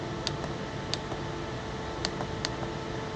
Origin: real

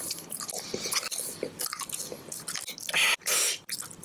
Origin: real